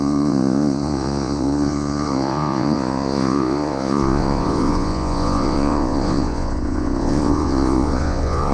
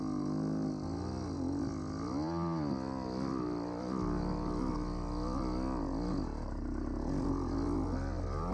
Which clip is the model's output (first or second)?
first